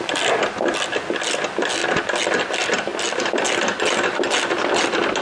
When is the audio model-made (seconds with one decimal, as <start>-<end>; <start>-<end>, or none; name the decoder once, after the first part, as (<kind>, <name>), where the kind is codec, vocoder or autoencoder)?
none